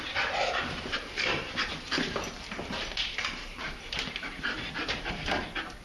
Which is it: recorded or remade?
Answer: remade